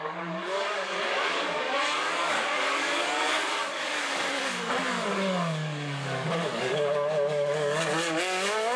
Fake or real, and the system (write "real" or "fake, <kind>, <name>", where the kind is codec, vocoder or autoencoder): fake, codec, DAC